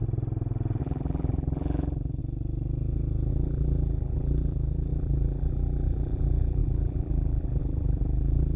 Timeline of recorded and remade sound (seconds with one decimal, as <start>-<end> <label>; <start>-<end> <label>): 0.0-0.8 recorded; 0.8-2.2 remade; 2.2-3.3 recorded; 3.3-8.6 remade